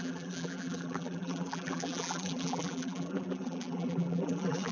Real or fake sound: fake